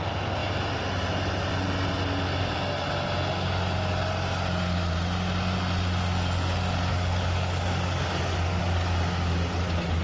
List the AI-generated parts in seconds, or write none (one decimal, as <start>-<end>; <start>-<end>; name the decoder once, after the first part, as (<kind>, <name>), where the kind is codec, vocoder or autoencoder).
6.9-8.6 (codec, DAC)